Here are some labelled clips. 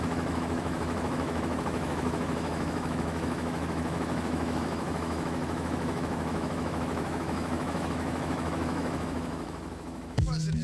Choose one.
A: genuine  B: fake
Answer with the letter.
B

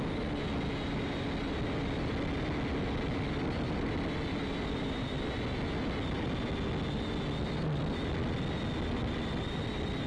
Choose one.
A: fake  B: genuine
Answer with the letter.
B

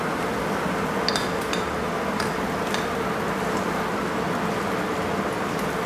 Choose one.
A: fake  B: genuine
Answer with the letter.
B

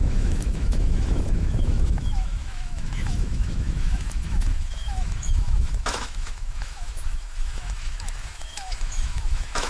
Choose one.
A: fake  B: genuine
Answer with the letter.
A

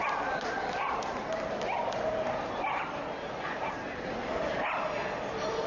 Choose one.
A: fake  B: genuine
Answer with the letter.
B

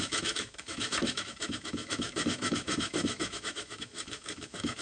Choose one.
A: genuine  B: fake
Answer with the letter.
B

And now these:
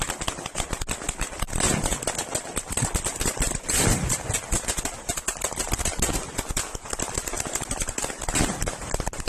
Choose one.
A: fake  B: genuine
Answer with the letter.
B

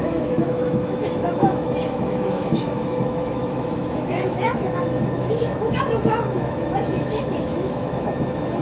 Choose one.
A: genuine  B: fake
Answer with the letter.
B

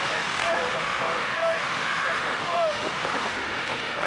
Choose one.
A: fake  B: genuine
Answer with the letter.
A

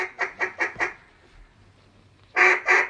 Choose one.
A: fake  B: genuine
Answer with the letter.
B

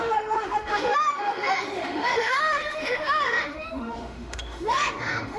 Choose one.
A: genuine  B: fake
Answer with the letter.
B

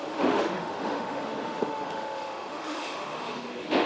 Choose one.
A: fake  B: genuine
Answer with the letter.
A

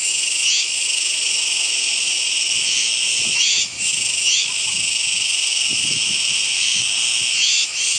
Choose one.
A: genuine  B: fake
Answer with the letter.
B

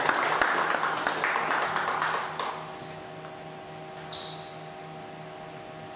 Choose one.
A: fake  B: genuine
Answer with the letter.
B